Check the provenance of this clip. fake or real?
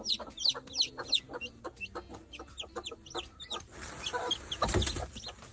real